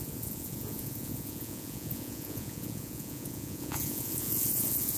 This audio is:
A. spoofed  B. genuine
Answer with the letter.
A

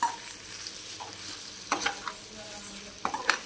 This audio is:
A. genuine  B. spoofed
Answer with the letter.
A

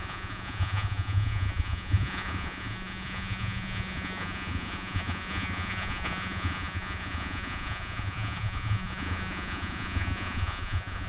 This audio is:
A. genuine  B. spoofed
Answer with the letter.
B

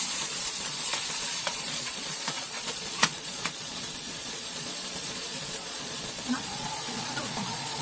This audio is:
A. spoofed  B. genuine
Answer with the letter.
A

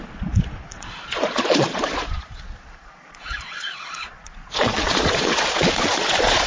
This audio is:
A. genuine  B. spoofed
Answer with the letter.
B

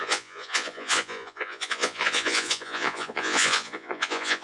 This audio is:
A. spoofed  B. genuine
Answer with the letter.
A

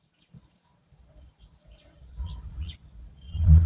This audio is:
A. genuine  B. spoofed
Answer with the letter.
B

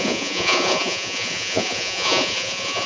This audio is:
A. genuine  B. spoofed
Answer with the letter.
B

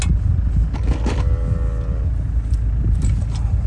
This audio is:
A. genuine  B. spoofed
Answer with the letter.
A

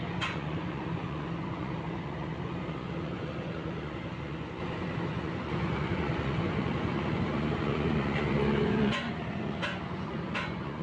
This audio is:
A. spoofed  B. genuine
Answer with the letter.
A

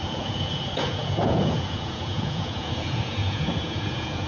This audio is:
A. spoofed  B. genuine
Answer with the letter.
A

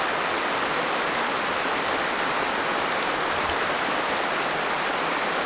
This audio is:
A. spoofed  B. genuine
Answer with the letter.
B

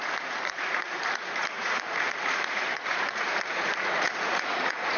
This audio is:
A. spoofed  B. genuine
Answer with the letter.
A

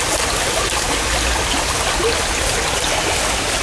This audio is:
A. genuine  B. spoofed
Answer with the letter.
A